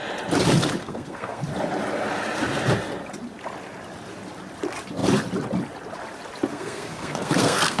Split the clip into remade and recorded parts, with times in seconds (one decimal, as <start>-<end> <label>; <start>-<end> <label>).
0.0-0.8 recorded; 0.8-1.4 remade; 1.4-6.5 recorded; 6.5-7.8 remade